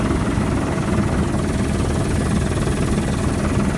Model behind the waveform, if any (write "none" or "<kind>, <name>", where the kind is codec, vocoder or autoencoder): none